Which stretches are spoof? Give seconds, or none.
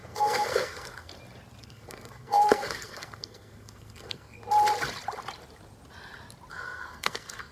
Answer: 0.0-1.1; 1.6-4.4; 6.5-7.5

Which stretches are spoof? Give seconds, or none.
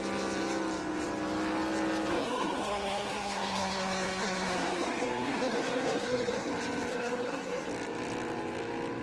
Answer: 2.1-6.5; 6.9-7.7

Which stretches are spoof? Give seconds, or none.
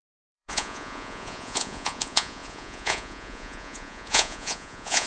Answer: 0.0-5.1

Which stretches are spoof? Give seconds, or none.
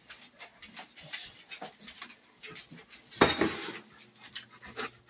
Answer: none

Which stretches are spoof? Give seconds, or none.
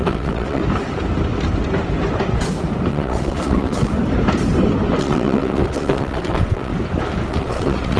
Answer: 0.0-0.6; 2.9-3.9; 5.0-6.7; 7.3-8.0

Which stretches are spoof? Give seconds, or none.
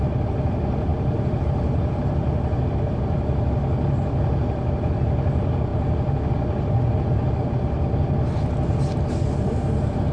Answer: none